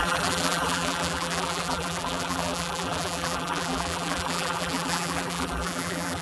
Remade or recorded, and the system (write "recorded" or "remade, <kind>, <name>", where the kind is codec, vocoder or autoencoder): remade, vocoder, BigVGAN v2